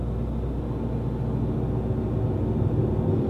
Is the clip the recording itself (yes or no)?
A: yes